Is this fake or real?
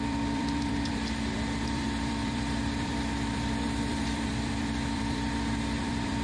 fake